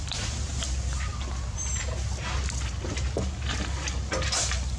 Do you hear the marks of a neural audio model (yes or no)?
no